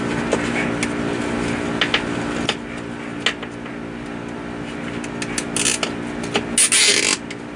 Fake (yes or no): no